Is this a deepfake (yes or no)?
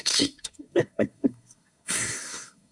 yes